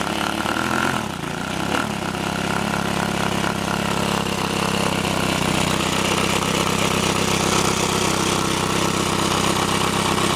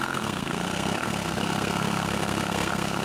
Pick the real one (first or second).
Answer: first